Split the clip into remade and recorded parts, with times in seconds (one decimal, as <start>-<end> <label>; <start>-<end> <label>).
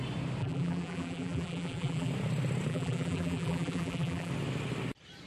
0.0-0.4 recorded; 0.4-2.1 remade; 2.1-2.7 recorded; 2.7-4.3 remade; 4.3-5.3 recorded